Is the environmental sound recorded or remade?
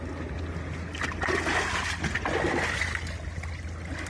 recorded